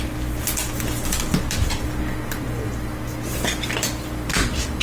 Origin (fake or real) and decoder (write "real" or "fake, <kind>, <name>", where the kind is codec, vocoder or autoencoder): real